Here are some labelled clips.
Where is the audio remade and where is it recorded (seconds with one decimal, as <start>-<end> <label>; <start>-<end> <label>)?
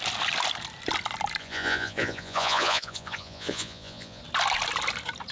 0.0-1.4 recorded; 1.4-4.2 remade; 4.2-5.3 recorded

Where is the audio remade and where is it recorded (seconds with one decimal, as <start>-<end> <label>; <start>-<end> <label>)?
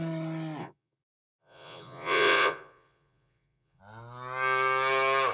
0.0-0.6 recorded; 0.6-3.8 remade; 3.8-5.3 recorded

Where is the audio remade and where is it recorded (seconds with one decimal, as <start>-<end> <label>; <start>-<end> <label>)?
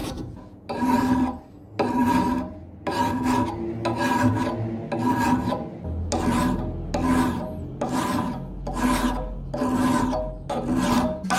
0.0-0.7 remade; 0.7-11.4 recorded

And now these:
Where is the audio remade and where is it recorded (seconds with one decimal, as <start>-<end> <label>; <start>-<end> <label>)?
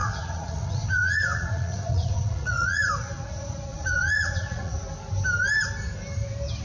0.0-2.9 remade; 2.9-3.7 recorded; 3.7-4.7 remade; 4.7-6.6 recorded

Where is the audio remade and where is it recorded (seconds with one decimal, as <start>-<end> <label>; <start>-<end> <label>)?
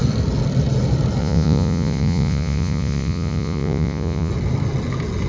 0.0-1.2 recorded; 1.2-4.3 remade; 4.3-5.3 recorded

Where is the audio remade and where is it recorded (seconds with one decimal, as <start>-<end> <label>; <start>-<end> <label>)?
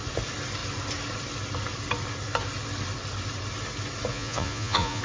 0.0-4.1 recorded; 4.1-5.0 remade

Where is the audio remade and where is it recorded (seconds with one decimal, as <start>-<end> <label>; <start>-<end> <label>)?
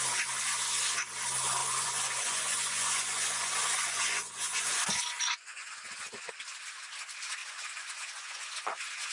0.0-1.6 recorded; 1.6-6.3 remade; 6.3-7.4 recorded; 7.4-9.1 remade